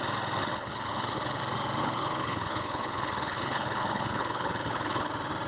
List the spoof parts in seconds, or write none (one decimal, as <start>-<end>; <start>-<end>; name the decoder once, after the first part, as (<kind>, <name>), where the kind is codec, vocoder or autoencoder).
0.4-1.4 (codec, HILCodec); 1.8-5.1